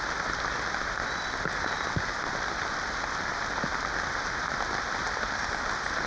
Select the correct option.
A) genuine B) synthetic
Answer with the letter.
A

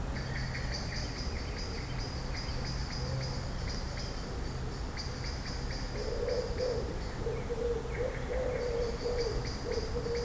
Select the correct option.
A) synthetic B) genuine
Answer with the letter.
B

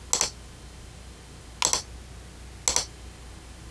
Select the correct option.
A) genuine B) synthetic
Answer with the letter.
A